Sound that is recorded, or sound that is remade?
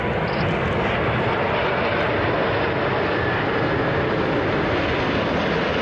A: recorded